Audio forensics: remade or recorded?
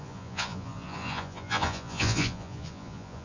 remade